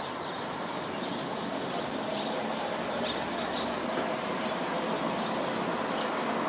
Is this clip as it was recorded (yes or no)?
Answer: yes